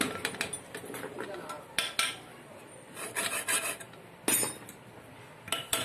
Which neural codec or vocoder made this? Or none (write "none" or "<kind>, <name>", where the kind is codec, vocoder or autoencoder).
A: none